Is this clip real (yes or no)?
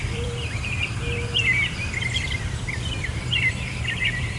no